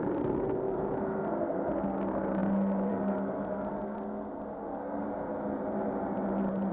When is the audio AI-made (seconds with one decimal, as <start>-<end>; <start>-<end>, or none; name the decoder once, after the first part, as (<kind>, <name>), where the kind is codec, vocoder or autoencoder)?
0.0-5.0 (codec, SNAC)